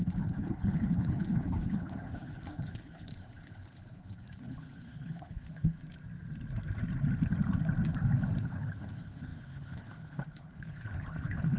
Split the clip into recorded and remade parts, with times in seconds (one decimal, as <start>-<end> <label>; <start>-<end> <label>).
0.0-5.8 remade; 5.8-8.4 recorded; 8.4-11.6 remade